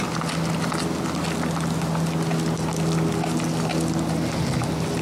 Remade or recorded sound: recorded